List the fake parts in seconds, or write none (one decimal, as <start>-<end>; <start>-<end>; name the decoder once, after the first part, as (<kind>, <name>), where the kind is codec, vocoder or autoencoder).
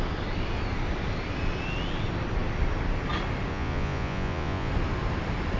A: 3.5-4.7 (vocoder, Vocos)